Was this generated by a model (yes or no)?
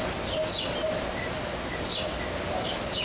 no